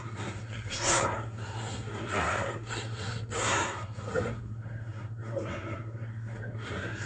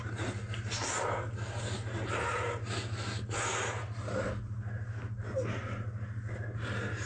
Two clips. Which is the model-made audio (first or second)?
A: first